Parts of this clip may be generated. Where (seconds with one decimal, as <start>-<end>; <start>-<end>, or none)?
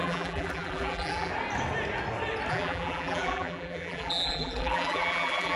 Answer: 0.0-1.3; 2.5-5.6